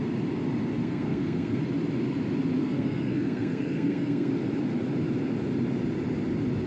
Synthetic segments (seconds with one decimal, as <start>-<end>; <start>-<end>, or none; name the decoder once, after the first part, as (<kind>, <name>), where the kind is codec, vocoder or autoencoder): 0.8-1.6 (codec, SNAC); 2.6-4.3